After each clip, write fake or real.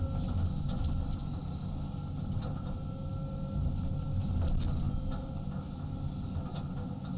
real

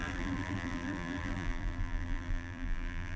fake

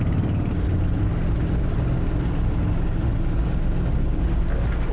real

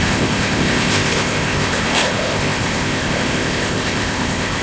fake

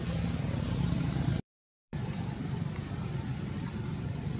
fake